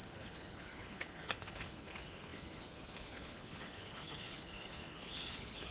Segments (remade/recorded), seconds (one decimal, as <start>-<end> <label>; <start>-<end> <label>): 0.0-5.7 remade